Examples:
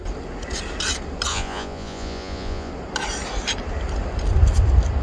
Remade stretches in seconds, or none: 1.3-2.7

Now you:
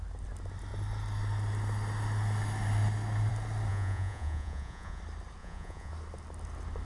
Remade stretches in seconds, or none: 3.7-5.0; 5.4-5.9